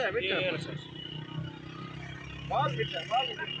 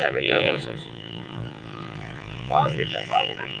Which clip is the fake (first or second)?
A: second